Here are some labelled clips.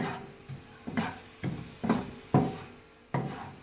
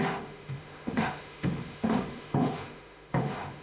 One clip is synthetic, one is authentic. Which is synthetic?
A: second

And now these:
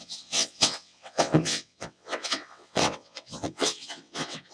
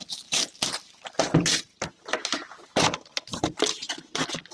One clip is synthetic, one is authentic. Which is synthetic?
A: first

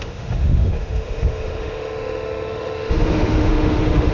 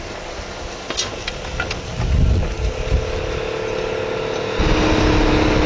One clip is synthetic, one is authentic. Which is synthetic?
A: first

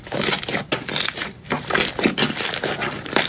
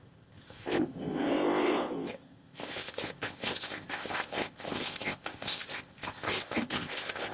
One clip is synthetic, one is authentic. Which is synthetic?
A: second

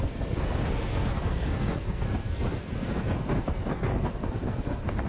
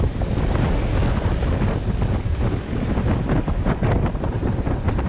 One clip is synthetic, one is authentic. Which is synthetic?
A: first